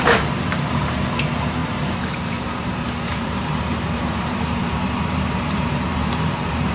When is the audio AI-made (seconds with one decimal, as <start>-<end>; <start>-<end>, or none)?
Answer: 0.0-6.7